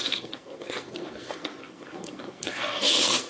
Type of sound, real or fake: fake